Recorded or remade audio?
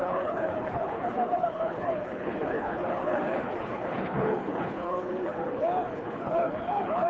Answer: remade